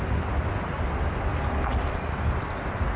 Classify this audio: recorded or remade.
recorded